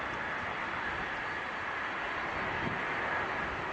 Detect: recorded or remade recorded